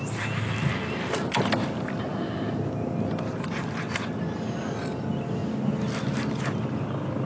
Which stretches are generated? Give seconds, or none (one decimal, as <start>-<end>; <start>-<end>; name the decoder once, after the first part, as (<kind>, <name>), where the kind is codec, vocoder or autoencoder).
none

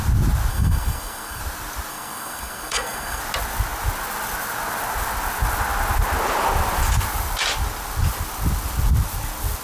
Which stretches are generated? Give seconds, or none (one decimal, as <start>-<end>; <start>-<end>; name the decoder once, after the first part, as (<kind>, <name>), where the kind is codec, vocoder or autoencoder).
0.5-1.4 (codec, SNAC); 1.9-3.2

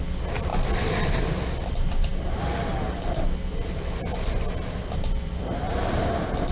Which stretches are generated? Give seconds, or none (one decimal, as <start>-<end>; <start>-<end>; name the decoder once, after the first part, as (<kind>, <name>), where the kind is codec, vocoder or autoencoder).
none

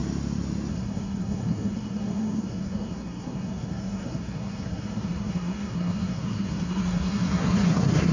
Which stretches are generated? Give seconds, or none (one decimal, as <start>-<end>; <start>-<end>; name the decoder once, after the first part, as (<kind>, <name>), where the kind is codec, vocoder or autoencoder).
0.7-8.1 (codec, SNAC)

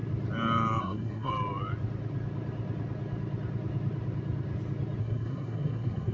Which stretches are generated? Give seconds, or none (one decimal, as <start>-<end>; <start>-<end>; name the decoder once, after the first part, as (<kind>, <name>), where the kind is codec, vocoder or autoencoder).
0.8-1.3 (codec, SNAC); 5.0-6.1

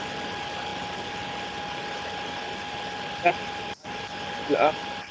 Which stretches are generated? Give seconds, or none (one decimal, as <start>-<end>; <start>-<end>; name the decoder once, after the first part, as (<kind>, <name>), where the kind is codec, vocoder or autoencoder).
none

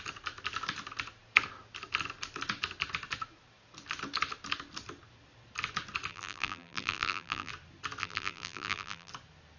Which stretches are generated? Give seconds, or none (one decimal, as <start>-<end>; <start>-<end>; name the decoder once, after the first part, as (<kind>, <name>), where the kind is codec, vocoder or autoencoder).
6.1-7.5 (vocoder, BigVGAN v2); 8.0-9.1

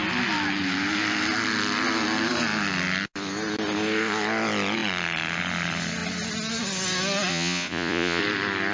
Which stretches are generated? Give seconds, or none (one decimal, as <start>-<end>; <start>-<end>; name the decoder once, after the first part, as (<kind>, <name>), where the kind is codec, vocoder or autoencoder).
7.3-8.2 (vocoder, Vocos)